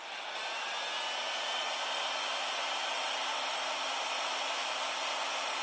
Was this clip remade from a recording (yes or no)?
no